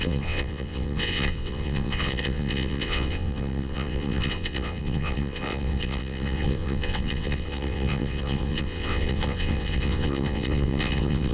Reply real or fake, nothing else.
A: fake